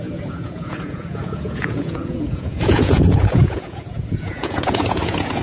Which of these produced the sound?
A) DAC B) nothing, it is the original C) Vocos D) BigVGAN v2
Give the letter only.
C